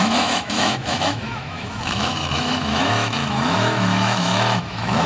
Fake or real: fake